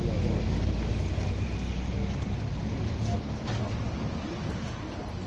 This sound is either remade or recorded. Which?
recorded